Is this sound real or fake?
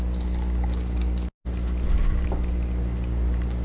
real